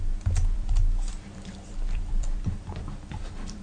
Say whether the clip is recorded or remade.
remade